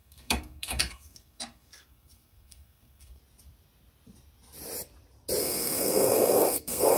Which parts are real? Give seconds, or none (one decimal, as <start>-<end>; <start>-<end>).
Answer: 3.2-5.4